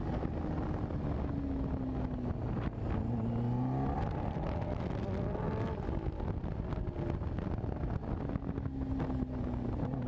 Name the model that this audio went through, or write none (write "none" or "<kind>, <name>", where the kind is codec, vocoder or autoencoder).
none